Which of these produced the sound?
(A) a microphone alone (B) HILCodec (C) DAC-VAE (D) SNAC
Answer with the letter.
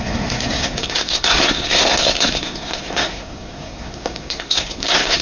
D